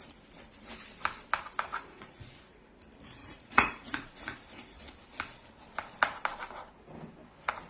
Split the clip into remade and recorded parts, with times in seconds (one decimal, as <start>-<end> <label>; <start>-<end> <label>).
0.0-1.7 recorded; 1.7-2.4 remade; 2.4-3.2 recorded; 3.2-4.8 remade; 4.8-7.7 recorded